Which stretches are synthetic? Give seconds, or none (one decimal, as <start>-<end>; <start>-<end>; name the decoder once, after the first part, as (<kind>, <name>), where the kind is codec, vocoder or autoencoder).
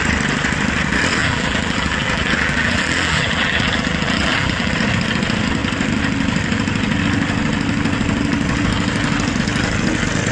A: 1.2-4.7 (vocoder, BigVGAN v2)